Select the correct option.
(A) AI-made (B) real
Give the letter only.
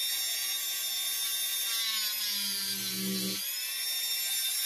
B